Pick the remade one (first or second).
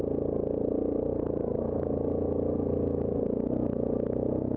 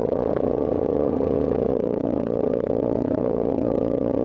second